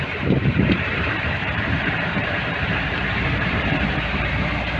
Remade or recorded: remade